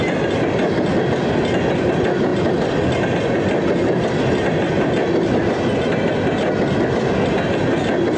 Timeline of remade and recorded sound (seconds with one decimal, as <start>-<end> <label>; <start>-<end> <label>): 0.0-8.2 recorded